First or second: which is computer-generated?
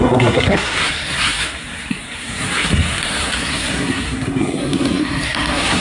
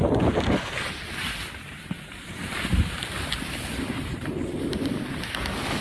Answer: first